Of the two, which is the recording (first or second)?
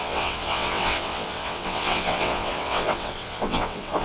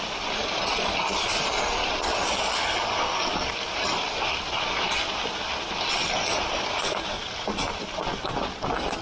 second